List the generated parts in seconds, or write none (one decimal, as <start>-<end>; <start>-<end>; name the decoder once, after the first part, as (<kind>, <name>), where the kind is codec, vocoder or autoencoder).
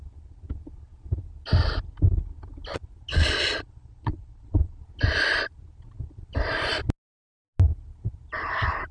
3.1-4.8 (vocoder, Vocos)